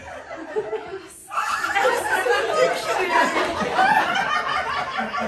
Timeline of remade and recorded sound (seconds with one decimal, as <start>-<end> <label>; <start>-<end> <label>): 0.0-5.3 recorded